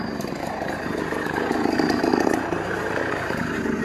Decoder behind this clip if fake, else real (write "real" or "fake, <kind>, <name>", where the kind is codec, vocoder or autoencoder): real